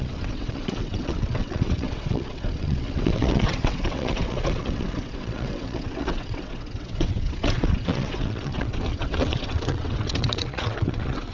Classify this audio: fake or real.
fake